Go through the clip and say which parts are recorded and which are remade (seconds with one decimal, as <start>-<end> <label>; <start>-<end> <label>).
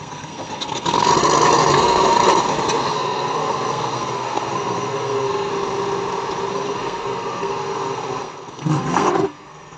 0.0-1.1 remade; 1.1-1.7 recorded; 1.7-2.2 remade; 2.2-2.9 recorded; 2.9-5.5 remade; 5.5-6.5 recorded; 6.5-9.8 remade